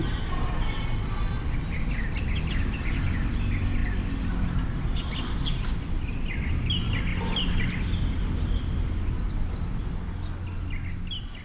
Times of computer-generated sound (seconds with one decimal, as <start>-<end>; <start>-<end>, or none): none